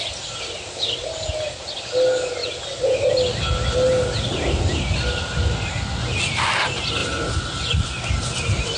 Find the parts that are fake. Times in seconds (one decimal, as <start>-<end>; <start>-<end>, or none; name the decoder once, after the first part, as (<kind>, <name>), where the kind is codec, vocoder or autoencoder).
0.0-2.4 (vocoder, BigVGAN v2); 4.8-6.0; 6.6-8.8